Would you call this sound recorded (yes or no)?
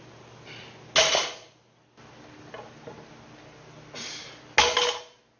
yes